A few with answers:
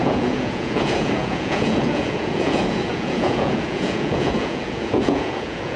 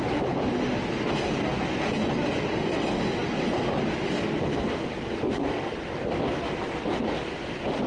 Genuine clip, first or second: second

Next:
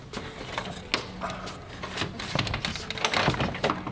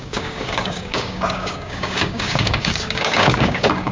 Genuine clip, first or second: first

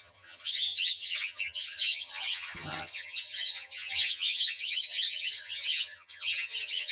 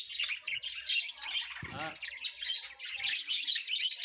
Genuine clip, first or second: second